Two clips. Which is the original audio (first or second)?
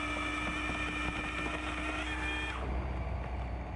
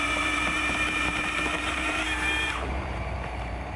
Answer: first